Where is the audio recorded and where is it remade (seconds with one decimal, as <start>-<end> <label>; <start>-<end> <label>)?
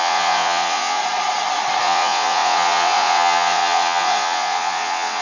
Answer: 0.0-1.0 remade; 1.0-1.8 recorded; 1.8-5.2 remade